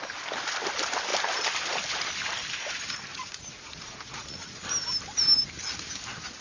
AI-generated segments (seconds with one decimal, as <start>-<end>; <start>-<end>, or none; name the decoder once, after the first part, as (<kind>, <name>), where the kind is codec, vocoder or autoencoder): 3.1-4.6 (vocoder, Vocos)